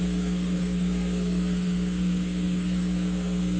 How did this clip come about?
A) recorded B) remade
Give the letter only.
B